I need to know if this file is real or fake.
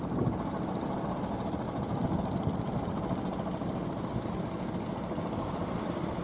real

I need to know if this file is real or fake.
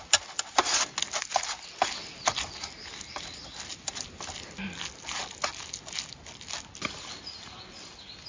real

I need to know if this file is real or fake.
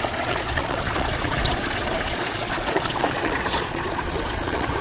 fake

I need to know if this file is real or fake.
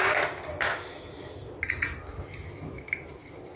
real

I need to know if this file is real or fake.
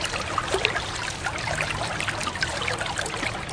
real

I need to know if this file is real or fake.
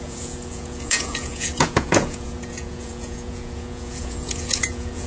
fake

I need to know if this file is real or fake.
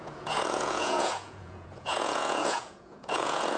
fake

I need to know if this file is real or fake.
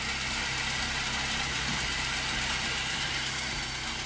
real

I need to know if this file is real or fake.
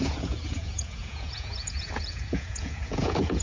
fake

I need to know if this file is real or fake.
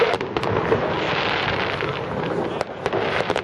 real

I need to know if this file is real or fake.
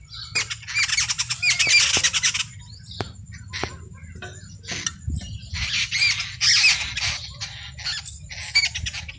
real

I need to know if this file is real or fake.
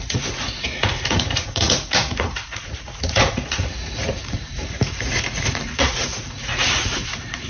fake